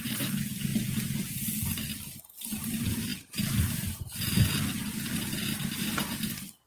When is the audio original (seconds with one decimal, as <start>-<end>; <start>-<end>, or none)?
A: 0.0-6.7